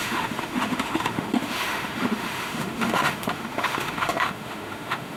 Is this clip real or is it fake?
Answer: fake